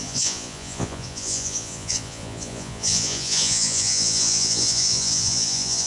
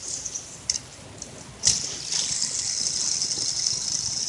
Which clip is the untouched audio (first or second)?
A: second